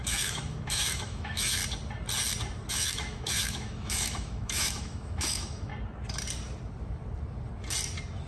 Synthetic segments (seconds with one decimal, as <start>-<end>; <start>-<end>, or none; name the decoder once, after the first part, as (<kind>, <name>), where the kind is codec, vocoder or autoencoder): 0.0-1.6 (autoencoder, DAC-VAE); 2.7-5.7